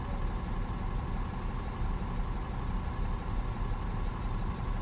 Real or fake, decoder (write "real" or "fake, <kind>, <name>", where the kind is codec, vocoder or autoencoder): real